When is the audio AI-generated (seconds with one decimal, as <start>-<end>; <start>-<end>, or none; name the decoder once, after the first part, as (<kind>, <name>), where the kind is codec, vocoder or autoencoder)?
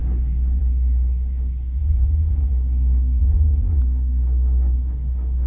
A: 1.8-2.5 (vocoder, Vocos); 3.2-3.8